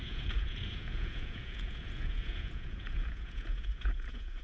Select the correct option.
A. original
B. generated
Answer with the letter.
B